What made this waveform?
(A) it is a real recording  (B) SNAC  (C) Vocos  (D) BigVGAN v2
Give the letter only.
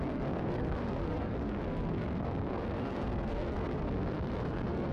B